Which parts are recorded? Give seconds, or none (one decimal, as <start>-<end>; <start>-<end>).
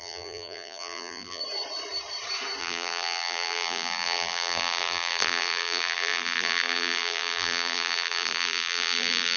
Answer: 1.4-2.6